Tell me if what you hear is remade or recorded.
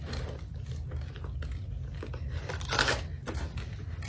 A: recorded